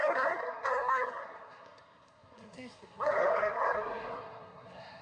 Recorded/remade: remade